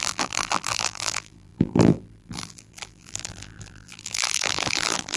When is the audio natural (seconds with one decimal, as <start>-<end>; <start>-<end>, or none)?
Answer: none

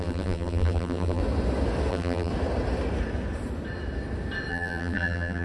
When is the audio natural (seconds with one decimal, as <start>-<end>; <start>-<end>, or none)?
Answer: 1.2-1.9; 2.3-4.5